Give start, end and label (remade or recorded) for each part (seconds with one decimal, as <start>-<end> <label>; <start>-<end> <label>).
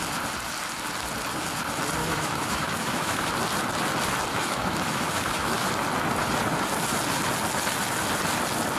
0.0-2.0 recorded; 2.0-3.3 remade; 3.3-4.3 recorded; 4.3-5.7 remade; 5.7-8.8 recorded